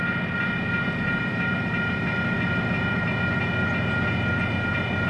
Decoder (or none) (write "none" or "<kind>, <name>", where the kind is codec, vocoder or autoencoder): none